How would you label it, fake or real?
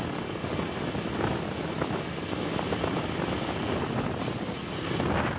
real